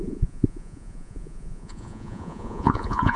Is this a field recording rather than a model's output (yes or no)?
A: no